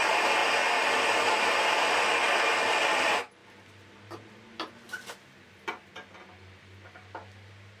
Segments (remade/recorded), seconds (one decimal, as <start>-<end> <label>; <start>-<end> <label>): 0.0-7.8 recorded